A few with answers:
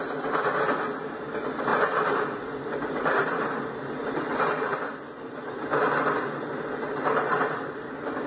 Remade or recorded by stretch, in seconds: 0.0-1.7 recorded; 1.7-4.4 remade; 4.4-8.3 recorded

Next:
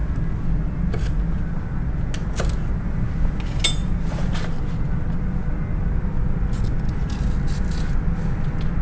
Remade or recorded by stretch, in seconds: 0.0-8.8 recorded